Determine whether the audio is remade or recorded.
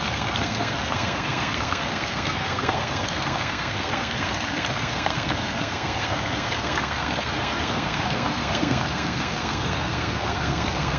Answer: remade